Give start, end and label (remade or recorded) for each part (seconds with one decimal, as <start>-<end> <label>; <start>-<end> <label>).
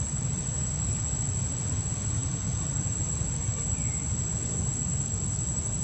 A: 0.0-5.8 recorded